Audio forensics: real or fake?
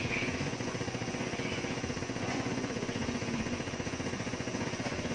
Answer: fake